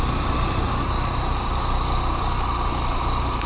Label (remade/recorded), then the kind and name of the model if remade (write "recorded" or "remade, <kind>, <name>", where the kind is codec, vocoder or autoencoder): recorded